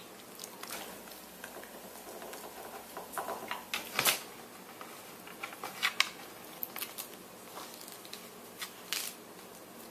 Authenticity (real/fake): real